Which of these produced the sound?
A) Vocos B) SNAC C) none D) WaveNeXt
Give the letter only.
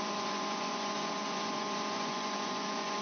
A